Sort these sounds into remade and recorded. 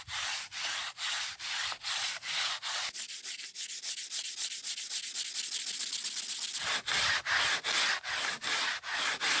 recorded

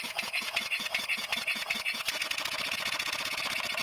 remade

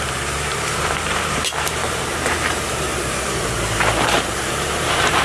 remade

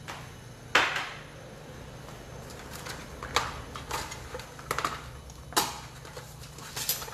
recorded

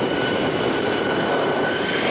recorded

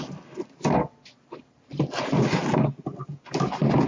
recorded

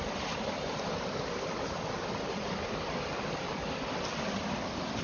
recorded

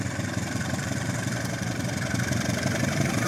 remade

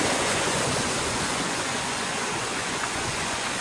remade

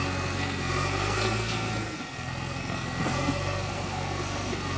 remade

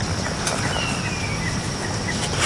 recorded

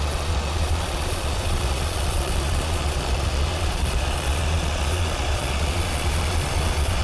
remade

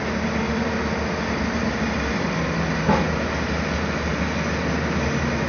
recorded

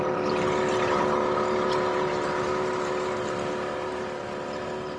recorded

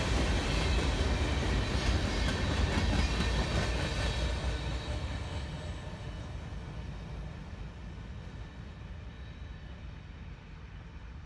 recorded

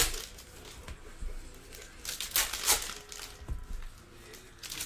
recorded